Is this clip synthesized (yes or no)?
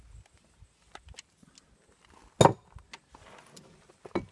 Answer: no